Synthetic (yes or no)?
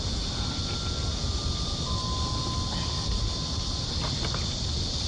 no